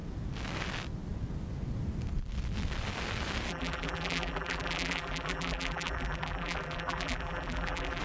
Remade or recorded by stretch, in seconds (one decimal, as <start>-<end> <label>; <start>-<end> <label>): 0.0-3.5 recorded; 3.5-8.0 remade